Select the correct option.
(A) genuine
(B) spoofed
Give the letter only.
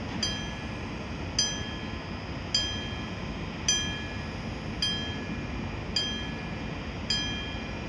A